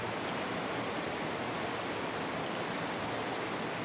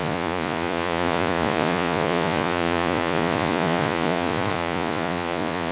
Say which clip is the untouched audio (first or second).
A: first